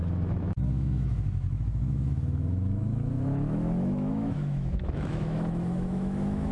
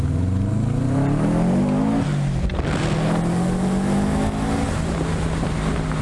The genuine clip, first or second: second